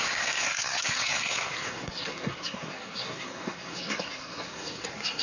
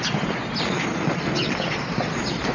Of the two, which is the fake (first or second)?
first